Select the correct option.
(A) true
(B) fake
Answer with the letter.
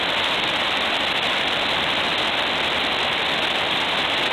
A